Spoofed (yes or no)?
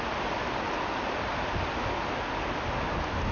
no